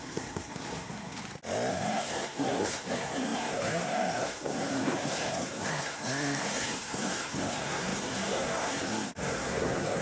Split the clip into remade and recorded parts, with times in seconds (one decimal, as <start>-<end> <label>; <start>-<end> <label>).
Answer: 0.0-1.2 remade; 1.2-1.7 recorded; 1.7-10.0 remade